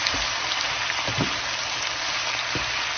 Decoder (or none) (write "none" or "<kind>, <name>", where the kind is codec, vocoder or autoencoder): none